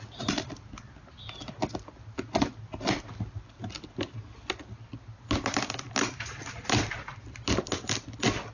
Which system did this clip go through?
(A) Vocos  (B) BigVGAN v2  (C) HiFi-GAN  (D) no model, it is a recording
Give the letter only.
D